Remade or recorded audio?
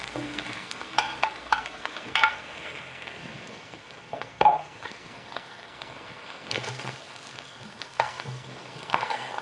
remade